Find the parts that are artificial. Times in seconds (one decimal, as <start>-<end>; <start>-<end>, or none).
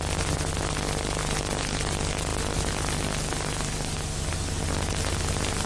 none